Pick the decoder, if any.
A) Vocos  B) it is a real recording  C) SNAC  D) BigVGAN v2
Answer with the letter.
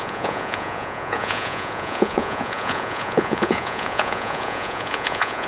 A